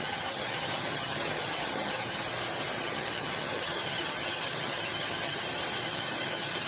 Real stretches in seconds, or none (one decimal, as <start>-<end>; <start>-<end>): 2.2-2.8; 5.4-5.9